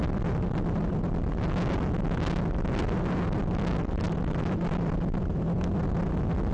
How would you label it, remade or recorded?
recorded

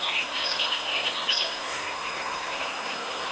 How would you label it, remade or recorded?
remade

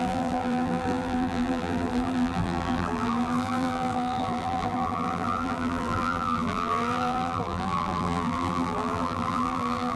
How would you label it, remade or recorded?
remade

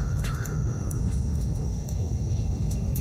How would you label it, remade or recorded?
remade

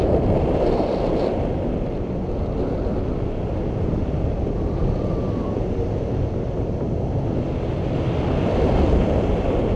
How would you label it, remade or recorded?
remade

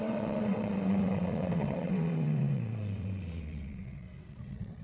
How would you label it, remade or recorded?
remade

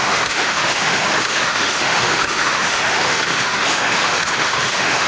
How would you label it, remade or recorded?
remade